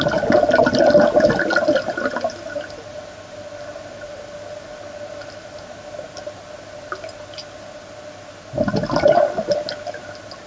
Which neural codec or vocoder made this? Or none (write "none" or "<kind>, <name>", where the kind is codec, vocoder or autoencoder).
none